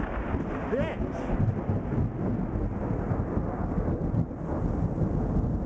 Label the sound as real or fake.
real